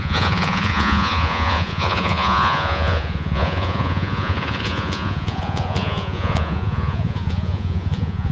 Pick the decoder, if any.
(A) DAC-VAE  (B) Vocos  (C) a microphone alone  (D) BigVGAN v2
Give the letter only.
B